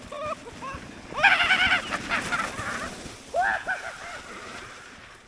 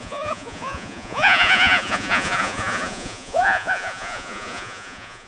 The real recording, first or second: first